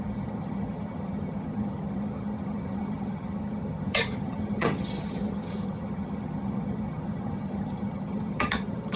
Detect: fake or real fake